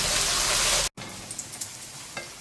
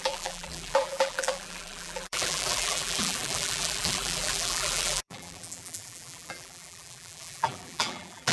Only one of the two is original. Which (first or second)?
first